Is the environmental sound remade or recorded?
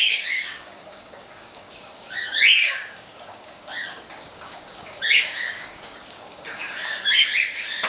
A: remade